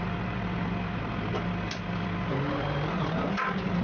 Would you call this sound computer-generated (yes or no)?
no